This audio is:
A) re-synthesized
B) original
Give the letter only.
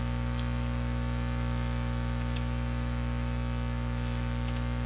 A